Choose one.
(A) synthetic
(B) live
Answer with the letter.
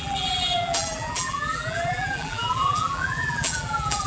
A